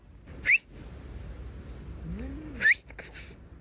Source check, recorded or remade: recorded